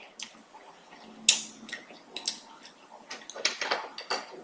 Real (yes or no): yes